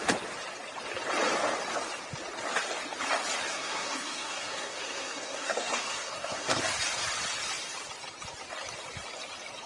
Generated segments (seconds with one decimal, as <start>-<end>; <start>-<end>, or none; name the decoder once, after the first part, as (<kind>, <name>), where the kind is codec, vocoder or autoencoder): 3.5-6.6 (codec, SNAC)